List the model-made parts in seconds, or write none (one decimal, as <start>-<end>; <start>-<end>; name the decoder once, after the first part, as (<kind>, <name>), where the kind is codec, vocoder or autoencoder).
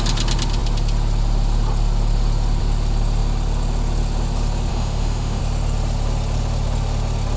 4.7-5.4 (autoencoder, DAC-VAE)